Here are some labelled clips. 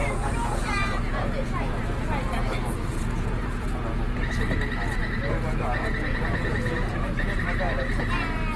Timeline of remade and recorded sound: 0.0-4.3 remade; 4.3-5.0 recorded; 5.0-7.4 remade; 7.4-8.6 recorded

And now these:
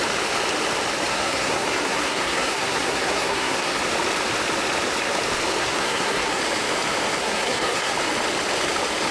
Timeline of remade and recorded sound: 0.0-1.1 recorded; 1.1-3.8 remade; 3.8-5.6 recorded; 5.6-6.4 remade; 6.4-7.2 recorded; 7.2-7.9 remade; 7.9-9.1 recorded

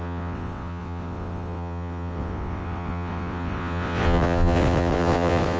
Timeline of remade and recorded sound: 0.0-5.6 remade

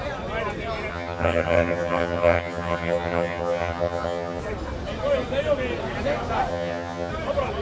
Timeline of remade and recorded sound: 0.0-0.9 recorded; 0.9-4.4 remade; 4.4-6.5 recorded; 6.5-7.1 remade; 7.1-7.6 recorded